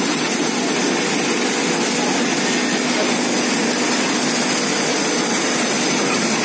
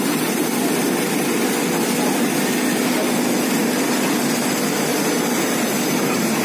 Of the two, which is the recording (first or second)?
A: first